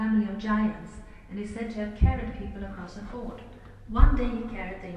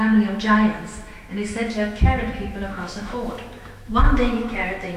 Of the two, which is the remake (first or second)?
second